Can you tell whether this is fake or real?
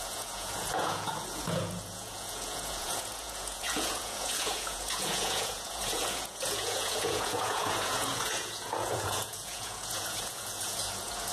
fake